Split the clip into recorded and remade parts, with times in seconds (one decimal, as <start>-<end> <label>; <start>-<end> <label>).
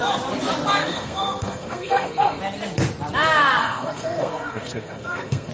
0.0-0.8 recorded; 0.8-2.4 remade; 2.4-3.6 recorded; 3.6-5.5 remade